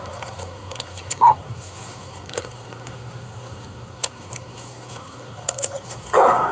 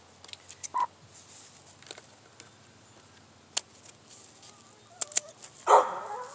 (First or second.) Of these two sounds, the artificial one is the first